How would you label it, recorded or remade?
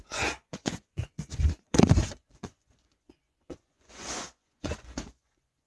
remade